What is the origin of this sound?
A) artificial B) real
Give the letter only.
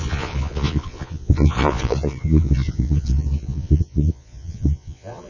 A